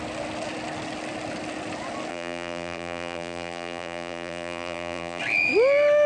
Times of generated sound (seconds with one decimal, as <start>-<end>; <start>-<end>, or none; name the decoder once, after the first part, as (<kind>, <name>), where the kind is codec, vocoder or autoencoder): 2.1-5.2 (vocoder, BigVGAN v2)